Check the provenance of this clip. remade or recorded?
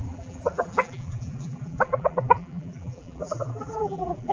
remade